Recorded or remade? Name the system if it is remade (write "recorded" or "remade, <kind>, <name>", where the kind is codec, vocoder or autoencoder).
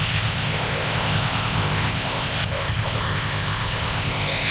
remade, codec, ZipCodec